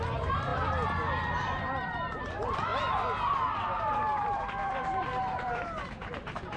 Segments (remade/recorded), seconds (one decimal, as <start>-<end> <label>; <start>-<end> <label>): 0.0-2.7 remade; 2.7-3.3 recorded; 3.3-6.6 remade